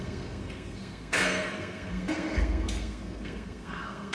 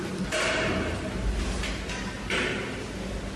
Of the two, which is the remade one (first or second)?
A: first